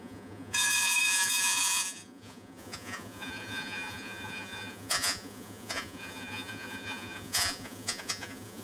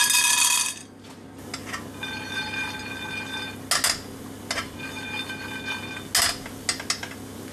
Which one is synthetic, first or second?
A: first